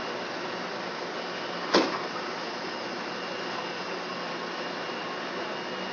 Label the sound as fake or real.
real